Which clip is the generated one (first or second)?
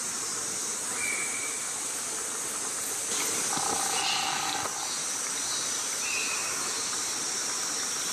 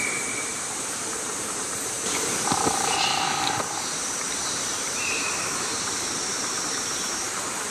second